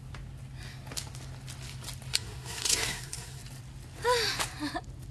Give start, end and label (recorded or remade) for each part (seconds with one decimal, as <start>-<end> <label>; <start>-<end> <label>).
0.0-2.1 recorded; 2.1-3.4 remade; 3.4-5.1 recorded

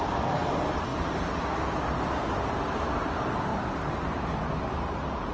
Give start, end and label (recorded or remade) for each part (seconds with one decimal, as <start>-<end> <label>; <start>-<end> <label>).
0.0-0.9 remade; 0.9-2.1 recorded; 2.1-5.3 remade

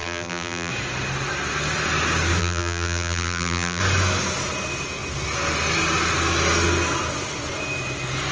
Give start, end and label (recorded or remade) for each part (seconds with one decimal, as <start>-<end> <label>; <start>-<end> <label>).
0.0-0.7 remade; 0.7-2.4 recorded; 2.4-3.8 remade; 3.8-8.3 recorded

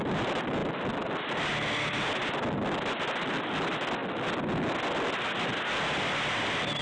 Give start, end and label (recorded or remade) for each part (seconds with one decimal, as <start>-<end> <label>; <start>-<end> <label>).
0.0-0.6 remade; 0.6-1.1 recorded; 1.1-2.2 remade; 2.2-3.4 recorded; 3.4-4.0 remade; 4.0-6.0 recorded; 6.0-6.8 remade

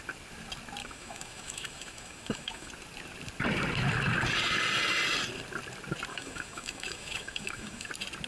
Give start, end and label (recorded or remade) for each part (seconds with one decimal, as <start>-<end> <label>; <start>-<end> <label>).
0.0-0.8 recorded; 0.8-2.7 remade; 2.7-6.1 recorded; 6.1-7.9 remade; 7.9-8.3 recorded

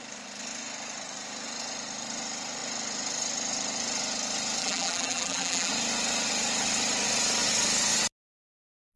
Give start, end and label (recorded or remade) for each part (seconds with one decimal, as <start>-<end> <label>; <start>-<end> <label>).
0.0-4.6 recorded; 4.6-5.7 remade; 5.7-9.0 recorded

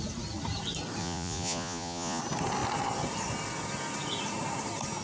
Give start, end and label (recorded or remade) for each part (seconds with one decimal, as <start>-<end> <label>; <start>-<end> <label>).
0.0-1.0 recorded; 1.0-2.2 remade; 2.2-5.0 recorded